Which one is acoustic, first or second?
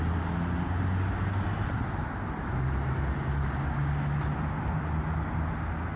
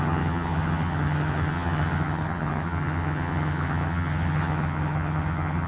first